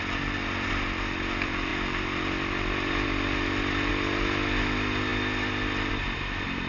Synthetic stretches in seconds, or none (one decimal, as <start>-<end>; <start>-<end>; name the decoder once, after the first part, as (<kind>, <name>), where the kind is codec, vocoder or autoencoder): none